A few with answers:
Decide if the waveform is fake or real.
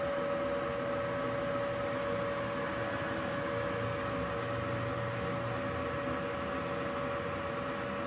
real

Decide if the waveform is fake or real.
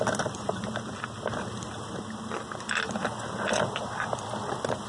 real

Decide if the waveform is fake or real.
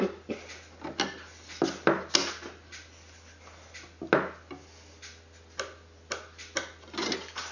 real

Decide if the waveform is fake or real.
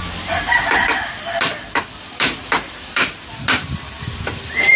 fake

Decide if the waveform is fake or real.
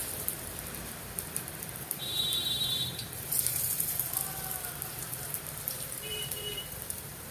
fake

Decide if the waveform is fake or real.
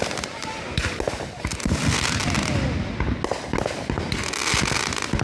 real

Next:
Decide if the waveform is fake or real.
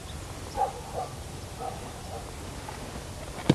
real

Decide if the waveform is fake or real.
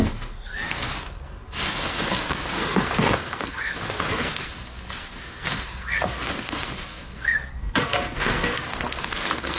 fake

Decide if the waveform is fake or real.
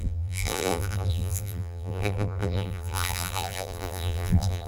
fake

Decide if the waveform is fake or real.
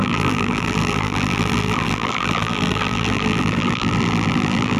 fake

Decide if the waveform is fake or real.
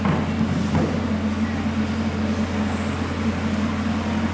real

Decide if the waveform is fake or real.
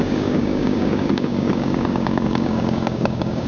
fake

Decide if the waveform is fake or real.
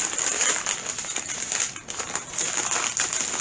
real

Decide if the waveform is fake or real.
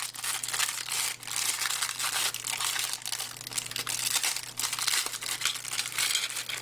real